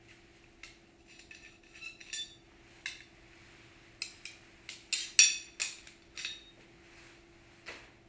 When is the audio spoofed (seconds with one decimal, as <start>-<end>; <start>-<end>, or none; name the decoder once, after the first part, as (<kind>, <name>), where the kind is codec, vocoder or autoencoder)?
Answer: none